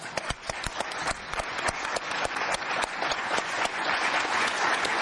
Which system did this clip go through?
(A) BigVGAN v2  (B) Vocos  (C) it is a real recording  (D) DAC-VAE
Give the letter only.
B